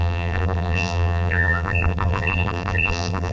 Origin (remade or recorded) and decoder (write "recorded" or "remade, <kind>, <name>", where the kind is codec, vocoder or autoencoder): remade, vocoder, BigVGAN v2